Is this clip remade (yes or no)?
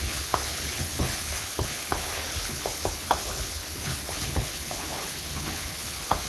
yes